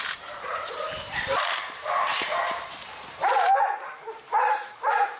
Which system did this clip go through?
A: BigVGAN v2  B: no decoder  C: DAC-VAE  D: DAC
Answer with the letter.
A